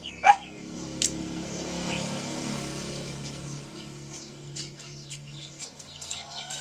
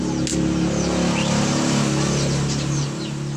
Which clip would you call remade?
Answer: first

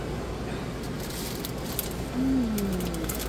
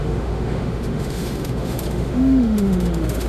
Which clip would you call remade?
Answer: second